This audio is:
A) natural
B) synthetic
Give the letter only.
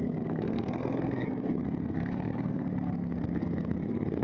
B